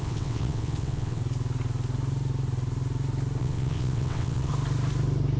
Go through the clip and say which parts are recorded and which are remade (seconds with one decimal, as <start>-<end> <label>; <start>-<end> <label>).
0.0-1.2 remade; 1.2-3.4 recorded; 3.4-4.5 remade; 4.5-5.4 recorded